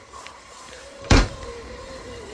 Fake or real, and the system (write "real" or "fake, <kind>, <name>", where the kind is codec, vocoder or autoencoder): fake, vocoder, BigVGAN v2